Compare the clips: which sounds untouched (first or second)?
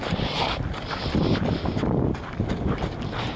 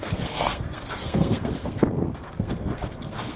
first